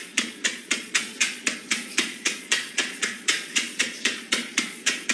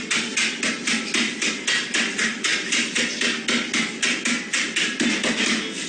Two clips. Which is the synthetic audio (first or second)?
first